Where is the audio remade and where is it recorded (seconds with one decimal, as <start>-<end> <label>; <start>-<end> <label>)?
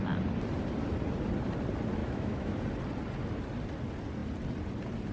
0.0-2.0 recorded; 2.0-2.6 remade; 2.6-5.1 recorded